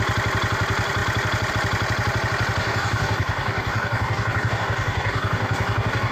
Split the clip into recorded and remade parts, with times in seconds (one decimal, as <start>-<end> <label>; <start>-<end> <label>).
0.0-2.6 recorded; 2.6-6.1 remade